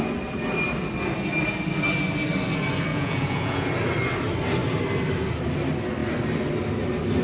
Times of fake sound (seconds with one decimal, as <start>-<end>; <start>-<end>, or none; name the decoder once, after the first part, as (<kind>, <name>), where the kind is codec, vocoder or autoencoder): 2.9-3.7 (vocoder, Vocos)

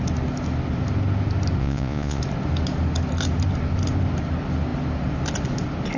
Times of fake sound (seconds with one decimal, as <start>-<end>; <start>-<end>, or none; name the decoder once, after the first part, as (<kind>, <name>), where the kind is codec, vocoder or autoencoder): 1.6-2.2 (vocoder, Vocos)

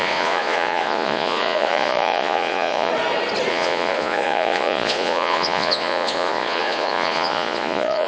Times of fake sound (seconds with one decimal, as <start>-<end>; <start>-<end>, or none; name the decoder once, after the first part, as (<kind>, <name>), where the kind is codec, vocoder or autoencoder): 0.0-2.9 (vocoder, Vocos); 3.5-8.1

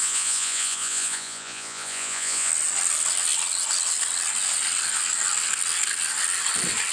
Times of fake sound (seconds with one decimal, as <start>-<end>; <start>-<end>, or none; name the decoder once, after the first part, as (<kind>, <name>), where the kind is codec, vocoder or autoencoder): 0.0-2.5 (vocoder, Vocos)

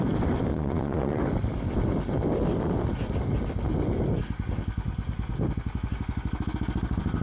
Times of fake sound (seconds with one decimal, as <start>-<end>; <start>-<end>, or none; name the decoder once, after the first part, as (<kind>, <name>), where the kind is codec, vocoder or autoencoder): 0.5-1.2 (vocoder, Vocos)

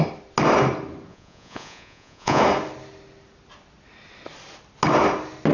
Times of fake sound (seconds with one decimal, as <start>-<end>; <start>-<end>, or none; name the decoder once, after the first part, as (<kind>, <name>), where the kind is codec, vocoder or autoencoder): 1.1-2.4 (vocoder, Vocos)

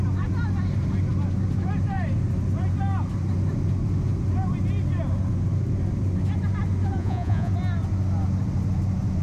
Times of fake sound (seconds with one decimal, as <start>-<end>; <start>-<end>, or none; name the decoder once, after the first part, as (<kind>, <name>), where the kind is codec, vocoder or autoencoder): 7.0-7.5 (vocoder, Vocos)

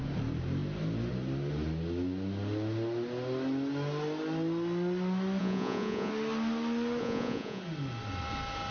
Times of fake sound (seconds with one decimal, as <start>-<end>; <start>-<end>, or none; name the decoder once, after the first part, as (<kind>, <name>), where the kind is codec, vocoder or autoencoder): 5.4-6.1 (vocoder, Vocos); 7.0-7.6